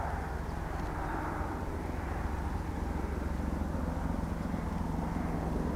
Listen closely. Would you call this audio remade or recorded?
recorded